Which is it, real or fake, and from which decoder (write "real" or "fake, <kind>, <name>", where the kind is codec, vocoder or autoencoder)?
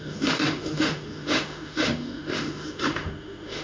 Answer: fake, autoencoder, DAC-VAE